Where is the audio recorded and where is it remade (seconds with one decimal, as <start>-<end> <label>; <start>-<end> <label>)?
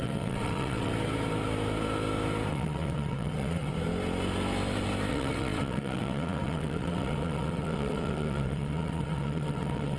0.0-0.9 remade; 0.9-2.5 recorded; 2.5-3.7 remade; 3.7-5.1 recorded; 5.1-10.0 remade